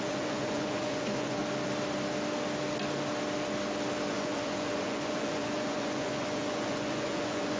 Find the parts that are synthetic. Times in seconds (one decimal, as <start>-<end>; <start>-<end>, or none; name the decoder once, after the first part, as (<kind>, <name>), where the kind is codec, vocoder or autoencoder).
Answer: 0.0-1.4 (vocoder, Vocos); 4.1-7.6